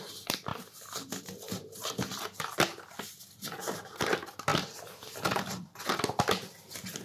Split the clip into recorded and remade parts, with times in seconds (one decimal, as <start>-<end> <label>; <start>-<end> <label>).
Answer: 0.0-7.0 recorded